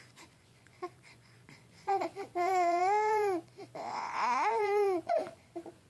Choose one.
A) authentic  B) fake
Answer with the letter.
B